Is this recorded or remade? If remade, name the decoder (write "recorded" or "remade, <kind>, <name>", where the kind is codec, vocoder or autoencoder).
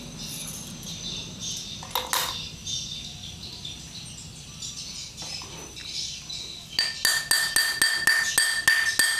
recorded